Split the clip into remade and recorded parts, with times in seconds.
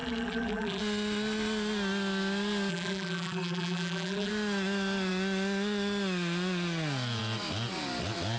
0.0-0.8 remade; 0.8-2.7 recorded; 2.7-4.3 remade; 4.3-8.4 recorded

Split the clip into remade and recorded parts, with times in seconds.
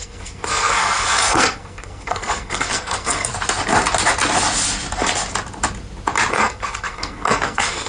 0.0-3.3 remade; 3.3-6.3 recorded; 6.3-7.9 remade